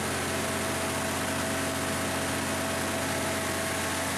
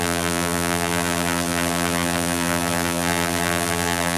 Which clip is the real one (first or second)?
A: first